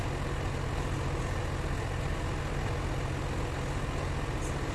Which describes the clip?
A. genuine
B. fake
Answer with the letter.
A